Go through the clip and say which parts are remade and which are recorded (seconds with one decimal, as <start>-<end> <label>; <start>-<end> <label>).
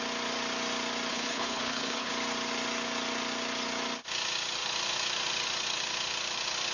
0.0-1.1 recorded; 1.1-2.1 remade; 2.1-6.7 recorded